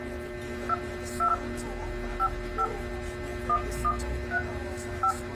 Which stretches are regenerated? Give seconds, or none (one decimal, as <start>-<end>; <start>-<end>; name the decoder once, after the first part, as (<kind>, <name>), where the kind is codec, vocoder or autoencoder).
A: 4.6-5.3 (autoencoder, DAC-VAE)